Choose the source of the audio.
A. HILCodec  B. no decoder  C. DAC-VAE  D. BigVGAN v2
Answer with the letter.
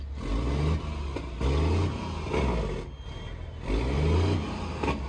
B